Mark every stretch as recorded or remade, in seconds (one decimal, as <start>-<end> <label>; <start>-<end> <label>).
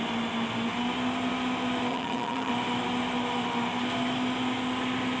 0.0-1.9 recorded; 1.9-2.5 remade; 2.5-5.2 recorded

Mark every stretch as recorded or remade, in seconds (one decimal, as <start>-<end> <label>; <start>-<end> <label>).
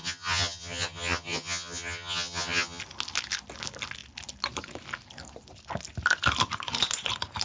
0.0-2.8 remade; 2.8-7.4 recorded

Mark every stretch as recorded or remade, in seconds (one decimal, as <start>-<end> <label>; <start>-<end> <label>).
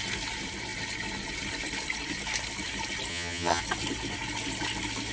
0.0-3.1 recorded; 3.1-3.6 remade; 3.6-5.1 recorded